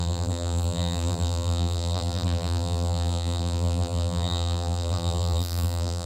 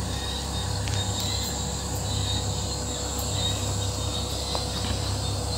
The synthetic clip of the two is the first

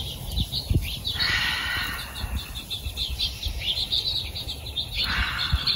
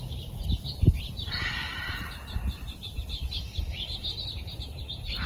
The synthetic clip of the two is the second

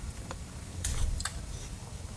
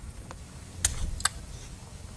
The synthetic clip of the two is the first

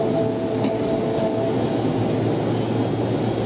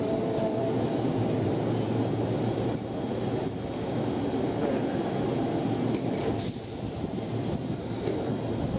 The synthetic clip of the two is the second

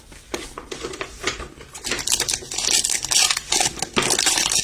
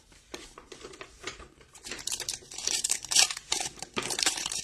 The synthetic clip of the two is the second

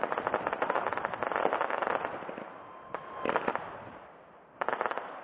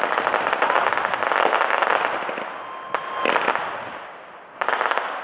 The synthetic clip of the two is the first